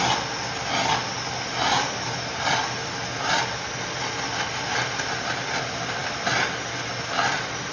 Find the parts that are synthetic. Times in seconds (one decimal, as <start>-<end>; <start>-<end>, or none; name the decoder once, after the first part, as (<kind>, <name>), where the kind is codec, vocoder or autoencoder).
none

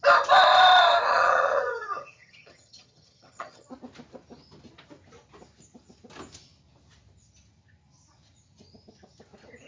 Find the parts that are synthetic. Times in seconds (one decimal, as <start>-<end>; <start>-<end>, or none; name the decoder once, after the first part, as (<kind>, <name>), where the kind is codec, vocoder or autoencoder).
1.1-3.7 (vocoder, HiFi-GAN)

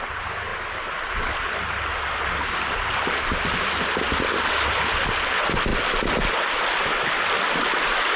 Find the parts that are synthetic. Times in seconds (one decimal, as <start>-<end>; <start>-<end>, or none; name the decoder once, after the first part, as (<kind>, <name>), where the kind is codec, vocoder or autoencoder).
none

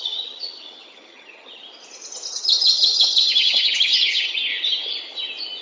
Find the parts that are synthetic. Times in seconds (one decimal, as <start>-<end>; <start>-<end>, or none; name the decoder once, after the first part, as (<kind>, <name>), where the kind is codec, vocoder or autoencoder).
0.0-1.6 (vocoder, HiFi-GAN); 2.3-4.5

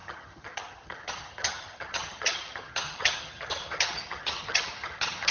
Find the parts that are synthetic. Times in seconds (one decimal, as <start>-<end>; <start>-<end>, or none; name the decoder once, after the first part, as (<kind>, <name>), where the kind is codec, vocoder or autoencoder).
0.0-5.3 (vocoder, HiFi-GAN)

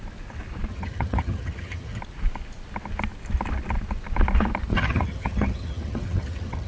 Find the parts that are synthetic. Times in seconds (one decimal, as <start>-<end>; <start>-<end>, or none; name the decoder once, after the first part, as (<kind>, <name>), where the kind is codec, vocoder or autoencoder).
0.7-2.0 (vocoder, HiFi-GAN); 4.7-6.7

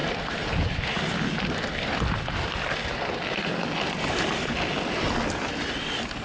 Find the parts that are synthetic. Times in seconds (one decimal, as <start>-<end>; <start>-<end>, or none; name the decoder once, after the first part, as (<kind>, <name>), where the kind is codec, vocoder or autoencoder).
none